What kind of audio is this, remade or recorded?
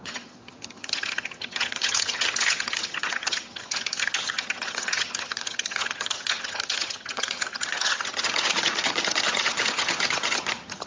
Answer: remade